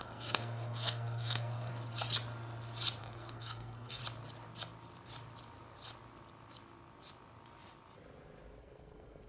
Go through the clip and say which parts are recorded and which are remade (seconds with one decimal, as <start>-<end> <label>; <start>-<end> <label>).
0.0-1.7 remade; 1.7-3.0 recorded; 3.0-4.0 remade; 4.0-8.6 recorded; 8.6-9.3 remade